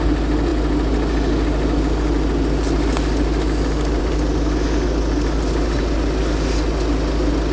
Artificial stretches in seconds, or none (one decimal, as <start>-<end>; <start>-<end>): none